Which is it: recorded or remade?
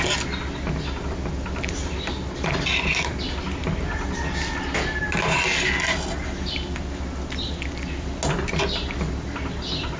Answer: recorded